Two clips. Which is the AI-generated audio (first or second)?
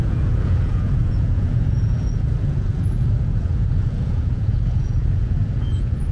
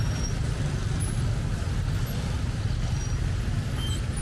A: first